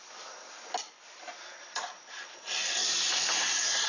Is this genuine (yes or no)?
yes